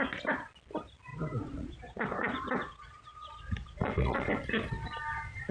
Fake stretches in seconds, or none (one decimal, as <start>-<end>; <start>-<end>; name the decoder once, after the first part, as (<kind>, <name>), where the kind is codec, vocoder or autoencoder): 1.1-4.3 (vocoder, Vocos)